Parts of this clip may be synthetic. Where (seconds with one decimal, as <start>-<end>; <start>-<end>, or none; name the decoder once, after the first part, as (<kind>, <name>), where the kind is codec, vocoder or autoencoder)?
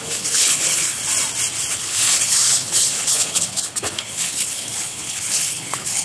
0.0-1.0 (codec, HILCodec); 1.7-6.0